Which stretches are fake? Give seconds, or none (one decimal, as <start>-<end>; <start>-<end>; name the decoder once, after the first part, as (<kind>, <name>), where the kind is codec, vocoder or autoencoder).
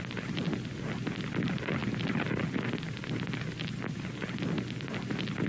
none